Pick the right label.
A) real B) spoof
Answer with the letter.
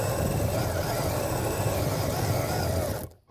A